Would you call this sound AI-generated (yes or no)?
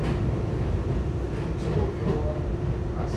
no